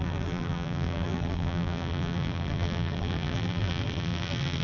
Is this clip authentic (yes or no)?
no